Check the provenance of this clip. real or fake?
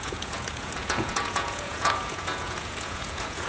fake